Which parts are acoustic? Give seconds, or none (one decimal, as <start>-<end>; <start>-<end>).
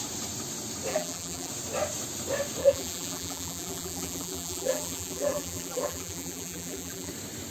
0.0-0.9; 1.5-2.6; 7.1-7.5